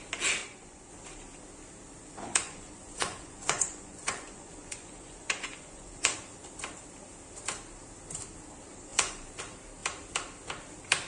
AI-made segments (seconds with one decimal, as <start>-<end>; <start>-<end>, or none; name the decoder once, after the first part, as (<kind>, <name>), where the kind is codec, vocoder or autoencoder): 0.4-0.9 (vocoder, Vocos); 2.2-6.2; 8.9-9.4